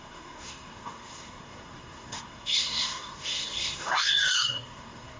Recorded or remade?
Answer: remade